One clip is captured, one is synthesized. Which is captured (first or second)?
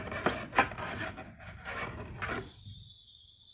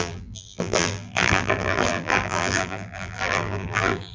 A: first